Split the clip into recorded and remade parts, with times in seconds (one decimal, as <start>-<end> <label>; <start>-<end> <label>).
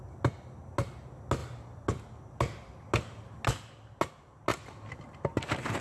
0.0-5.8 recorded